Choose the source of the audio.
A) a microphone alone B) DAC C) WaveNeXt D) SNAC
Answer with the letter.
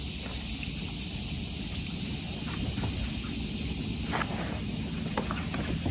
A